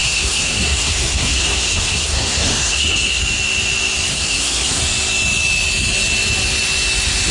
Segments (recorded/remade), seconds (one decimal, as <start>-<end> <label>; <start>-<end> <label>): 0.0-3.2 remade; 3.2-4.1 recorded; 4.1-4.8 remade; 4.8-7.3 recorded